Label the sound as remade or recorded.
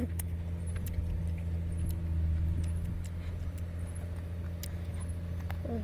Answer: recorded